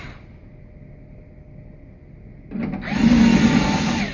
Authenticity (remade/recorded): recorded